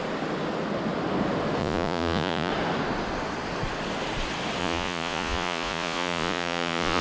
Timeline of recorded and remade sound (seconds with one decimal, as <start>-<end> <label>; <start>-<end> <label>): 0.0-1.6 recorded; 1.6-2.5 remade; 2.5-4.6 recorded; 4.6-7.0 remade

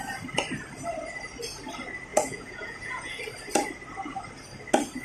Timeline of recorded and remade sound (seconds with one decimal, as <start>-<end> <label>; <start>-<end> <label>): 0.0-2.1 recorded; 2.1-3.2 remade; 3.2-5.0 recorded